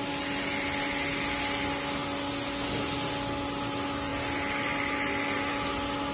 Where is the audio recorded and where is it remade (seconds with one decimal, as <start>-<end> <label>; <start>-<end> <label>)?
0.0-6.1 recorded